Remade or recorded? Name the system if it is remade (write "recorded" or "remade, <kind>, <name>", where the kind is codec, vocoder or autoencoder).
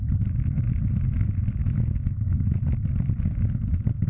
recorded